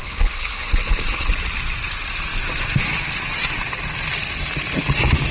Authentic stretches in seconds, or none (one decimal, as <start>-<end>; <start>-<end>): 1.3-5.3